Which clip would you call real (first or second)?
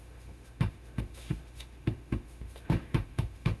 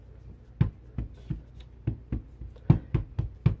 second